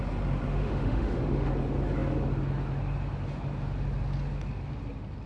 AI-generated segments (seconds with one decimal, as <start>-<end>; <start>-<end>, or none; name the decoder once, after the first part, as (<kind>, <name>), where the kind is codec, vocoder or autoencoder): 0.5-1.5 (autoencoder, DAC-VAE)